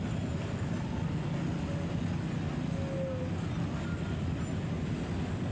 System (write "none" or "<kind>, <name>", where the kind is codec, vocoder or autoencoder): none